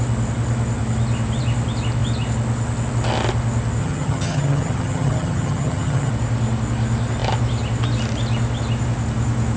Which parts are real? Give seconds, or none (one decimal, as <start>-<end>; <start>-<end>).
0.0-3.8; 6.1-9.6

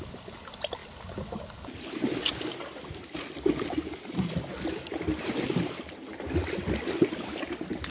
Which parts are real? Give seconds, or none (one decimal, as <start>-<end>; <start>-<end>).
0.0-7.9

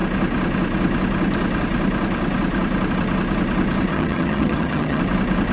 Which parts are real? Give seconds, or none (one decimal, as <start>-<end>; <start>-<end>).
0.0-3.9; 5.0-5.5

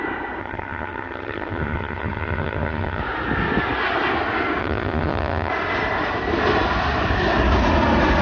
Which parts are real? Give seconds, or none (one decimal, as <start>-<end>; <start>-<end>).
0.0-0.4; 3.0-4.6; 5.5-8.2

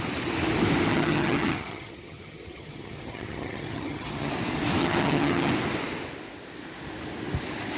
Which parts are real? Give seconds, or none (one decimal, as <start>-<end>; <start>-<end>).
0.0-0.9; 4.3-4.8; 5.5-7.8

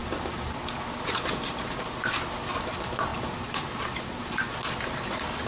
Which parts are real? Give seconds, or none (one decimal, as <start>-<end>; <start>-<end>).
0.0-5.5

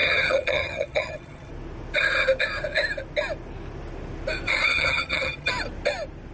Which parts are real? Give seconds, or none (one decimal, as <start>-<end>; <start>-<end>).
1.5-4.7; 5.5-6.3